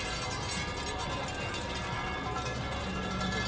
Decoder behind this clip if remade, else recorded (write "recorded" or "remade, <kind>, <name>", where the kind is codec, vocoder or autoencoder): recorded